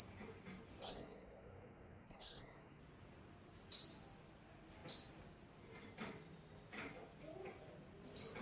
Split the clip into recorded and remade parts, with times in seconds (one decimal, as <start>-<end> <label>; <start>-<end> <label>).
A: 0.0-0.8 recorded; 0.8-2.8 remade; 2.8-8.4 recorded